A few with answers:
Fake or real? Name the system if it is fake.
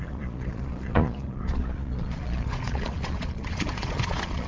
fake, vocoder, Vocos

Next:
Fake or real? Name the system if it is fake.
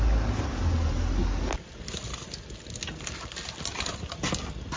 real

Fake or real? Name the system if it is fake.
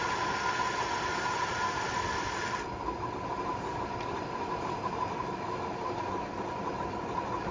real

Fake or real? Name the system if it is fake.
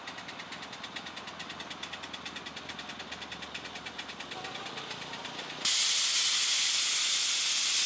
real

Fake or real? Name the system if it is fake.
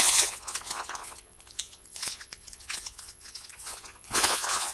fake, vocoder, Vocos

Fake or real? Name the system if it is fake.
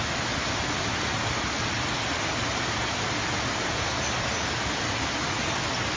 real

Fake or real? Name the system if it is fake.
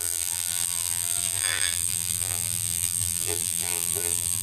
fake, vocoder, BigVGAN v2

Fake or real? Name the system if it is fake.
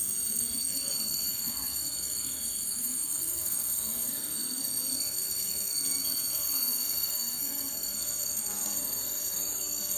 fake, codec, SNAC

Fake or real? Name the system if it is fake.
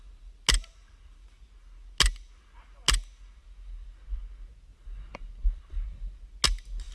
real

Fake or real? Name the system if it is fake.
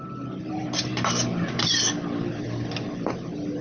real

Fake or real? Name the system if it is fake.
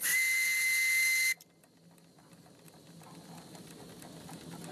real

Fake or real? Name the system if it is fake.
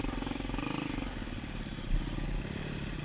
real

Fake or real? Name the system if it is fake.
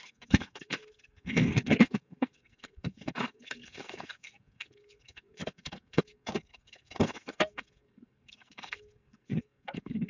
fake, codec, SNAC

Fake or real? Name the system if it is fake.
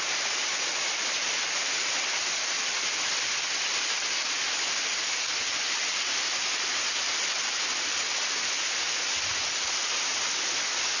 real